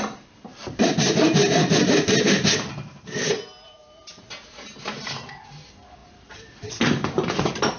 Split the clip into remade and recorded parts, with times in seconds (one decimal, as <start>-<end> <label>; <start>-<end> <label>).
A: 0.0-0.6 recorded; 0.6-5.3 remade; 5.3-6.0 recorded; 6.0-7.8 remade